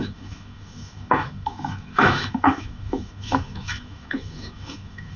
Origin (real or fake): fake